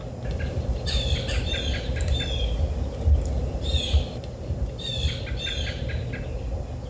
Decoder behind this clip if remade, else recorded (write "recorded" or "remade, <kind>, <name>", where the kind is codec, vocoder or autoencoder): recorded